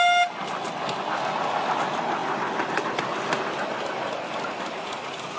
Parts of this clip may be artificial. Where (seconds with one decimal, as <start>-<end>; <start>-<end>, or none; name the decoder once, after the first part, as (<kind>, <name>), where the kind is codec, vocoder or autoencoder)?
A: none